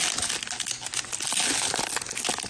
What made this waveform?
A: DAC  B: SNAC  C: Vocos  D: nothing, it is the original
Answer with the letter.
D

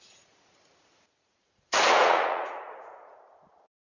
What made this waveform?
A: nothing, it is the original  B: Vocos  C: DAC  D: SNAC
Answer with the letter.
B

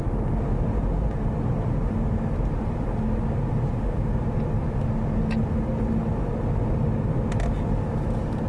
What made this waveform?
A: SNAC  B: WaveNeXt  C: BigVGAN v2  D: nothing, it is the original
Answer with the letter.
D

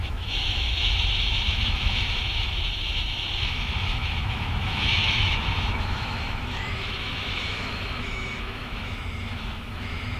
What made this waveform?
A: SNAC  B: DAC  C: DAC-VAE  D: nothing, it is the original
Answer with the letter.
C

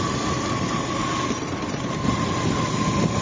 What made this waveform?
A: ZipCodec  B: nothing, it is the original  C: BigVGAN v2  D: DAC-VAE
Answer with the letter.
B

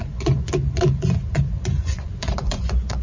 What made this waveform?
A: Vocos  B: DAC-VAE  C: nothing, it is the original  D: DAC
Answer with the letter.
A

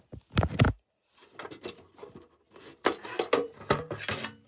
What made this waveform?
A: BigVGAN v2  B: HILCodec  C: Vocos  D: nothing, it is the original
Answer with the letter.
D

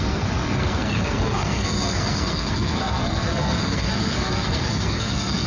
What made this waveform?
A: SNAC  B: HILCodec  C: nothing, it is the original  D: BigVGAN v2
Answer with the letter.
A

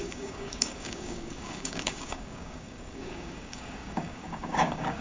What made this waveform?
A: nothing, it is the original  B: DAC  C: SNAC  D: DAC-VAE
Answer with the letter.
B